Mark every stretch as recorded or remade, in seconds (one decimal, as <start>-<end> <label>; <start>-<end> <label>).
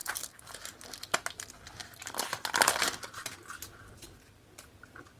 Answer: 0.0-5.2 recorded